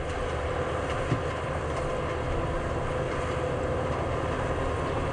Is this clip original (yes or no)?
yes